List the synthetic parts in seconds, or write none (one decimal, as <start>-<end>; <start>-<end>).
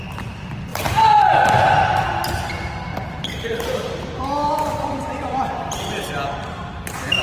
0.7-1.4; 2.9-6.1